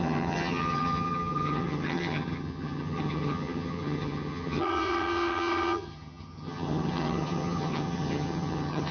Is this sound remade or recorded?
remade